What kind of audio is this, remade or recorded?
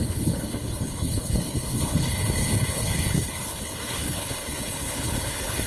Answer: remade